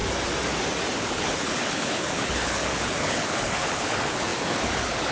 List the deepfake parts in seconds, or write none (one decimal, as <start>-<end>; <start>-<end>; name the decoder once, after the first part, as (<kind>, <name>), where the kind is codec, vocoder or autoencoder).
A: 1.0-5.1 (codec, HILCodec)